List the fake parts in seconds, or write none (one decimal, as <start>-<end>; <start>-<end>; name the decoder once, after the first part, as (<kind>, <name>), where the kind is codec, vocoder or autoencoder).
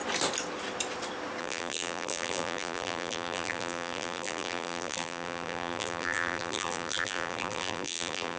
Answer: 1.4-8.4 (vocoder, BigVGAN v2)